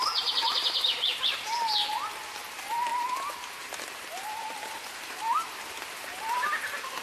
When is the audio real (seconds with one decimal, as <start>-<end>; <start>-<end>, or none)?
0.0-7.0